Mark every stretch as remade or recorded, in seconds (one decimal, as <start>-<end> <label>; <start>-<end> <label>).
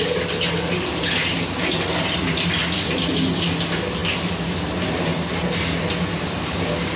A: 0.0-7.0 recorded